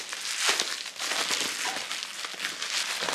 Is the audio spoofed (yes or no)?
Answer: no